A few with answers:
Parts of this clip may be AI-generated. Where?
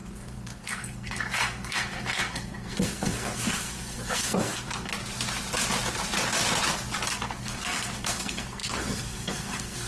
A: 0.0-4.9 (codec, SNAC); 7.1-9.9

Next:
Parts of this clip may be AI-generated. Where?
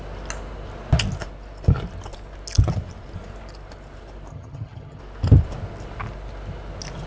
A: 4.3-5.0 (vocoder, HiFi-GAN)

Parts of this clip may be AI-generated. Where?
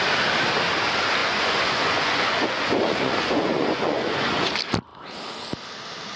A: 1.2-4.5 (vocoder, Vocos)